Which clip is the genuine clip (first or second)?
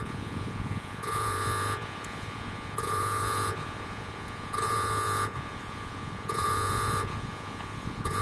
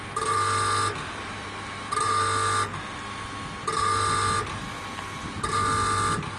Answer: second